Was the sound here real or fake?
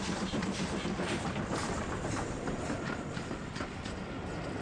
real